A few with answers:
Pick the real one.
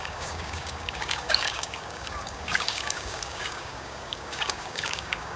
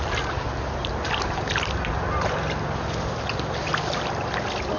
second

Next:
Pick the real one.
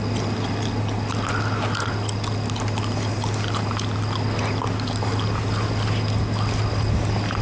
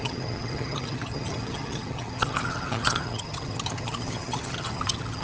first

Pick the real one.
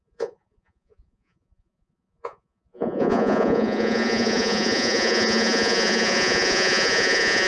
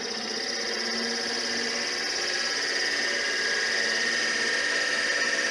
second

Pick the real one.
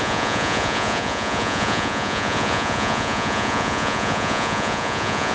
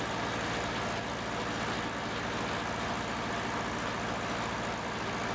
second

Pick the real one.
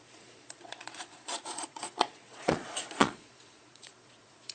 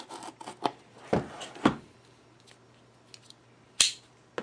second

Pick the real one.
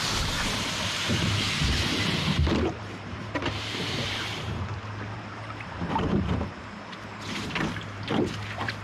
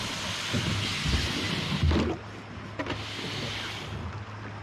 second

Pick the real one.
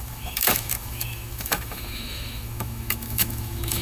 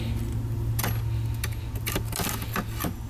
second